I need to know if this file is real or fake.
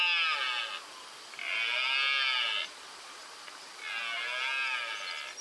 real